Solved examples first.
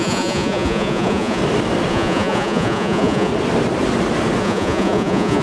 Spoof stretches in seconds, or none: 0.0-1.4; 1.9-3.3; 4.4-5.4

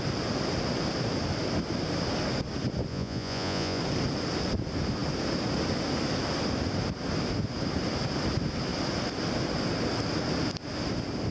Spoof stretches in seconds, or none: 2.9-3.8

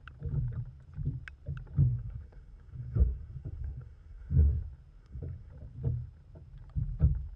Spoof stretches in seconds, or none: 1.8-4.6; 5.0-5.5

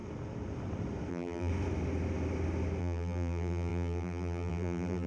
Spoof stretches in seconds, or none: 1.1-1.5; 2.8-5.1